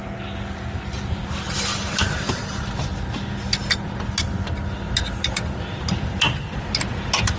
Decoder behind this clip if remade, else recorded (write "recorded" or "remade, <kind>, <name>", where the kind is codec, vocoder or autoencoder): recorded